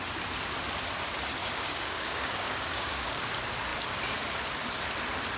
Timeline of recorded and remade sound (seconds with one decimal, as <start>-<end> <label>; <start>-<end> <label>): 0.0-1.4 recorded; 1.4-3.2 remade; 3.2-5.4 recorded